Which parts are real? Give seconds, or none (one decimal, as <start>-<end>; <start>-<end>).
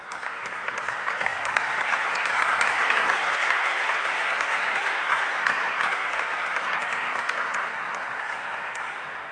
none